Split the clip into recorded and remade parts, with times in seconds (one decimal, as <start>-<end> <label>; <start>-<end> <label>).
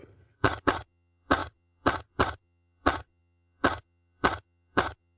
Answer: 0.0-5.2 remade